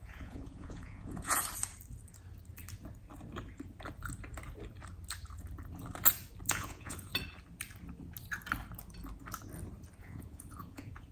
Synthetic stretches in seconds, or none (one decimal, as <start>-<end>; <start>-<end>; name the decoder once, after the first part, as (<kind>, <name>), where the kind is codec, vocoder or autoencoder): 0.0-1.4 (vocoder, Vocos); 6.5-7.1; 10.0-11.1

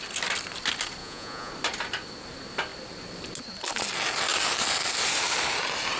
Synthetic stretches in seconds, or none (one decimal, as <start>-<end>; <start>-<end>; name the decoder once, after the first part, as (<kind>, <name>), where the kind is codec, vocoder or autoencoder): 1.0-1.5 (vocoder, Vocos)

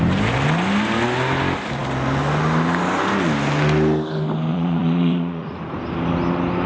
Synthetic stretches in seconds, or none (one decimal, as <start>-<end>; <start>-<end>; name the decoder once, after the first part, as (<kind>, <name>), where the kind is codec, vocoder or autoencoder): 4.5-5.6 (vocoder, Vocos)

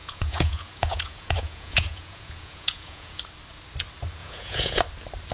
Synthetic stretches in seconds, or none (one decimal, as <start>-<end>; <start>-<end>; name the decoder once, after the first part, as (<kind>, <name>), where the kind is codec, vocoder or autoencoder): 0.0-3.2 (vocoder, Vocos); 4.2-4.8

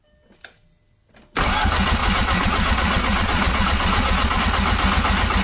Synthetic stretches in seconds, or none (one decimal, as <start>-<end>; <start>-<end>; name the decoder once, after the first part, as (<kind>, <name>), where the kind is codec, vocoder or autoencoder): 2.0-4.4 (vocoder, Vocos)

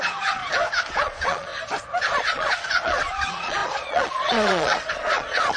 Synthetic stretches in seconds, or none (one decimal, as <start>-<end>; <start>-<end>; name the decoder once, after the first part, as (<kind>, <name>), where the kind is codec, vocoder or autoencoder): 0.0-0.4 (vocoder, Vocos); 0.9-1.5; 2.0-5.6

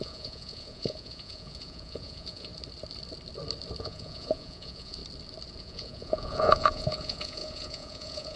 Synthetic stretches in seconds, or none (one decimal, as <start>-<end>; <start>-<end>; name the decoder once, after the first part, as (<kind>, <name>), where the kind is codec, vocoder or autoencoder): 0.0-2.5 (vocoder, Vocos); 3.8-5.0; 5.6-8.4